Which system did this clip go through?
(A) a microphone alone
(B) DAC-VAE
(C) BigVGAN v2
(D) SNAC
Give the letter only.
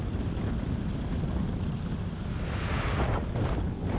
A